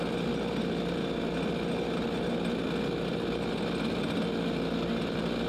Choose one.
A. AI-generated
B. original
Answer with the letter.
B